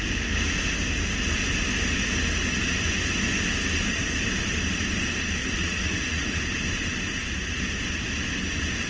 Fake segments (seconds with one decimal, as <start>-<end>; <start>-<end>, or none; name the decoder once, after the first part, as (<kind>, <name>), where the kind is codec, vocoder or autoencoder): 5.4-6.4 (vocoder, Vocos)

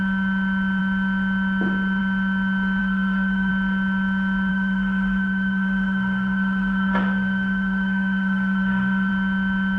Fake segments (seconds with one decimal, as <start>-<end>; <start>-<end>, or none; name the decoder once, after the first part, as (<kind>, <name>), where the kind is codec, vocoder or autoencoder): 2.8-3.5 (codec, SNAC); 4.5-9.1

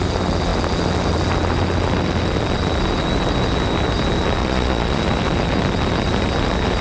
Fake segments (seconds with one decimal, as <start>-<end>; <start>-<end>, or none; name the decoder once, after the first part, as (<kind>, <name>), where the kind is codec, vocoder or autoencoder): 4.4-5.0 (vocoder, Vocos)

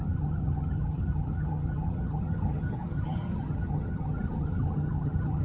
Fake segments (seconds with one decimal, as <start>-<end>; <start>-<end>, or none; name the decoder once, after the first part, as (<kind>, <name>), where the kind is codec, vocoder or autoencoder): 0.0-5.4 (vocoder, HiFi-GAN)

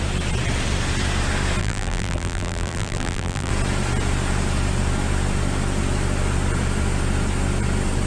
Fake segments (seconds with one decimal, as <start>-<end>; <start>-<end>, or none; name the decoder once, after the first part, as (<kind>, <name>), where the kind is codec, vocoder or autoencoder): 1.6-3.5 (vocoder, BigVGAN v2)

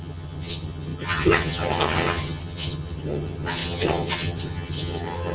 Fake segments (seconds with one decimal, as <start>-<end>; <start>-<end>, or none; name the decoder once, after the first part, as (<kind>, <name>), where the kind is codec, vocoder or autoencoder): 0.0-5.3 (vocoder, HiFi-GAN)

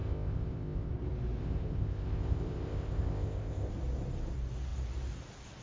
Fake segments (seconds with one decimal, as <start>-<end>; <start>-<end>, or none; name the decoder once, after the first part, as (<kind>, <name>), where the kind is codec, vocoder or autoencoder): 0.0-0.9 (codec, ZipCodec); 1.4-3.7

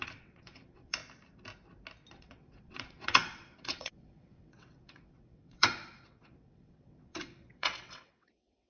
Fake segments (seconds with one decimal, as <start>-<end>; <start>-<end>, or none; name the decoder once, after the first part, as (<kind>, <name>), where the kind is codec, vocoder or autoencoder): 0.0-1.0 (vocoder, WaveNeXt); 2.1-8.7